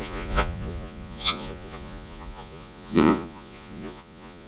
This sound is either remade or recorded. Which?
remade